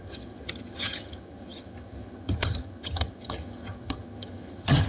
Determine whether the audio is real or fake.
fake